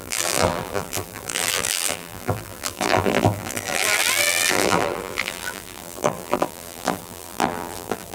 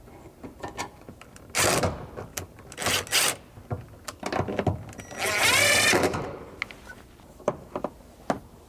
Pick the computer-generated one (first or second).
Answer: first